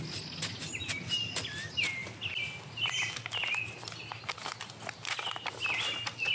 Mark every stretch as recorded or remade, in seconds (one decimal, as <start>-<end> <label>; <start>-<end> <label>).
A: 0.0-6.3 recorded

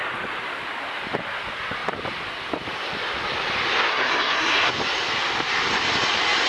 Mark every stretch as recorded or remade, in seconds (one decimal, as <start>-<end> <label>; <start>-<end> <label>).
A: 0.0-3.9 recorded; 3.9-4.7 remade; 4.7-6.5 recorded

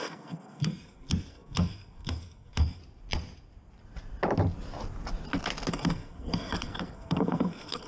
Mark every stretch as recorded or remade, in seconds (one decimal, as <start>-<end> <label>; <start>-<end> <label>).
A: 0.0-2.8 remade; 2.8-5.7 recorded; 5.7-7.9 remade

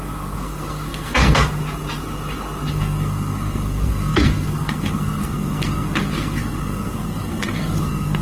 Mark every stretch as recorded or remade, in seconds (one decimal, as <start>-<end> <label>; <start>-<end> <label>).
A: 0.0-1.6 remade; 1.6-2.7 recorded; 2.7-8.2 remade

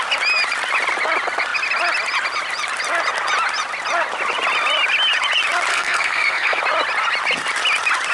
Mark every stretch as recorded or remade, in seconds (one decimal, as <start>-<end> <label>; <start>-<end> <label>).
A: 0.0-5.7 recorded; 5.7-6.6 remade; 6.6-8.1 recorded